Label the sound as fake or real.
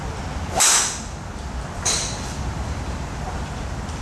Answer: fake